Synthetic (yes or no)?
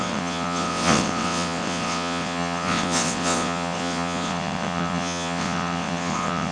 yes